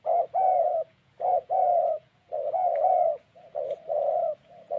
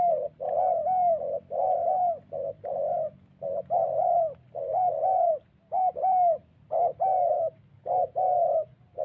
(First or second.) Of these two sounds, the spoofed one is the first